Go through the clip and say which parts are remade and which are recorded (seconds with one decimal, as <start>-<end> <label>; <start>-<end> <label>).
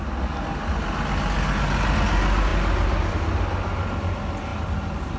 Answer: 0.0-5.2 recorded